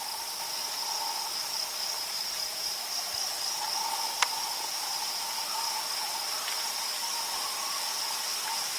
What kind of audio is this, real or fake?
real